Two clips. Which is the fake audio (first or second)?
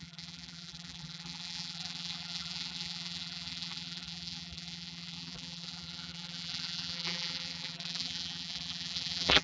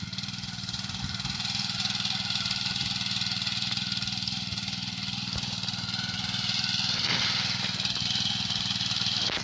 first